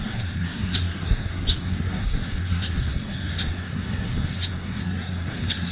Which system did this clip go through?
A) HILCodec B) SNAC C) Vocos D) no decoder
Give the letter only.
B